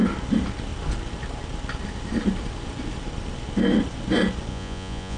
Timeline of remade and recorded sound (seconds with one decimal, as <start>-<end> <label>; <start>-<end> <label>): 0.0-4.5 recorded; 4.5-5.2 remade